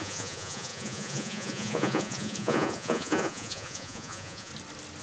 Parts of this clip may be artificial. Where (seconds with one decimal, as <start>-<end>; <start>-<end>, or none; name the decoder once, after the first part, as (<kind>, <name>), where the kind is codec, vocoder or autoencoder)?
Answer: 0.0-4.5 (vocoder, Vocos)